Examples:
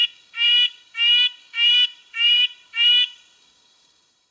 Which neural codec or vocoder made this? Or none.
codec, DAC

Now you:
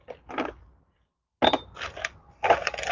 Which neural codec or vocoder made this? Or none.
none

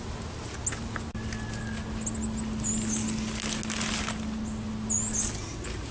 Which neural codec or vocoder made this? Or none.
none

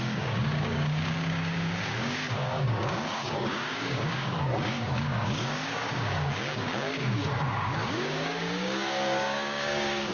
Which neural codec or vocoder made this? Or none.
codec, DAC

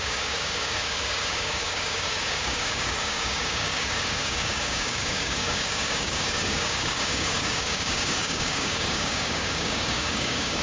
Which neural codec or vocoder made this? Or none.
codec, DAC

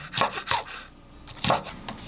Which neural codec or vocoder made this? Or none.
none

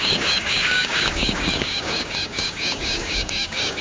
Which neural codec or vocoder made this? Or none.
codec, DAC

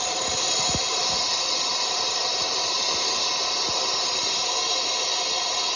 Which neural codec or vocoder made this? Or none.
none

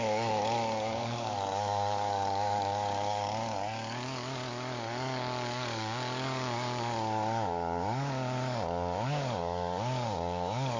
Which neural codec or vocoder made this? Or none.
codec, DAC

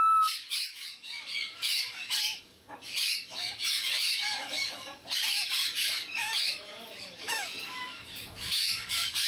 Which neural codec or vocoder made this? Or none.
codec, DAC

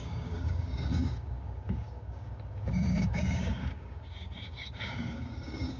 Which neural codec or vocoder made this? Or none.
codec, DAC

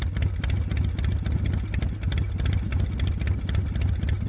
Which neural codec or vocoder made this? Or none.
none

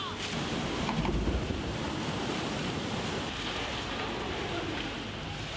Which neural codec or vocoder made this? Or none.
none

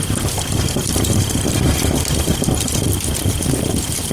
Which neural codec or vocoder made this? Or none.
none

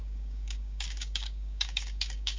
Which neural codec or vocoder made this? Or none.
codec, DAC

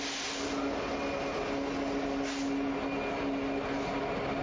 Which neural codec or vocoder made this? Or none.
none